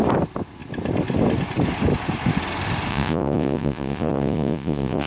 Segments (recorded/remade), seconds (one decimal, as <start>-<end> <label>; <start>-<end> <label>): 0.0-2.9 recorded; 2.9-5.1 remade